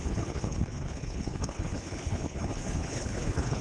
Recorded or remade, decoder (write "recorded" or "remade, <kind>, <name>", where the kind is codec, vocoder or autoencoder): remade, codec, HILCodec